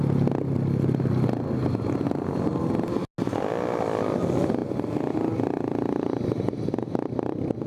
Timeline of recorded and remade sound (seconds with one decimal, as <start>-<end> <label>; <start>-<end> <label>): 0.0-7.7 recorded